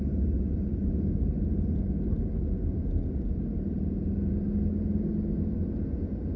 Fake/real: real